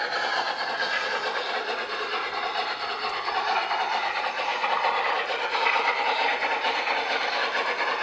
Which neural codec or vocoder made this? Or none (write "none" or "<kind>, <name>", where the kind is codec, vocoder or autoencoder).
vocoder, BigVGAN v2